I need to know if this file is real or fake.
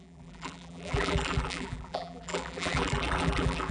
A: fake